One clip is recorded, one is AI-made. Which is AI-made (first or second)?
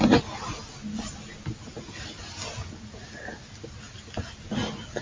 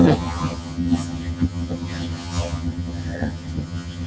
second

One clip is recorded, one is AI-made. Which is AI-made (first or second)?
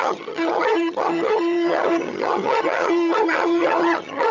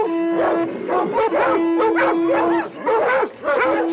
first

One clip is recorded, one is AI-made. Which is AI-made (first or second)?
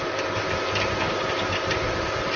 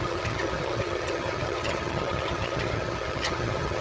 second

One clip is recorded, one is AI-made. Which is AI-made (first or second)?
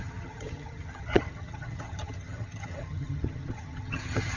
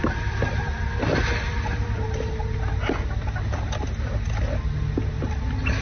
first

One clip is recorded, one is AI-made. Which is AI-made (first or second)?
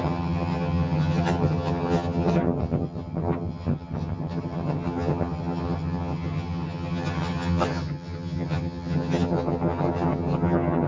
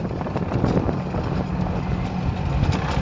first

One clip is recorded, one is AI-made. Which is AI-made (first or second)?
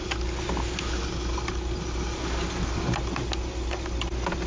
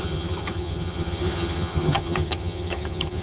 second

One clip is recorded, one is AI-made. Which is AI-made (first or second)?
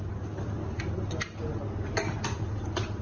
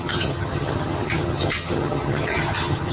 second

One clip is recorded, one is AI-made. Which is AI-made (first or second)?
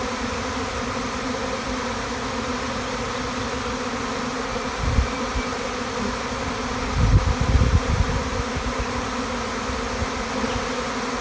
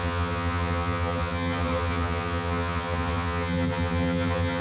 second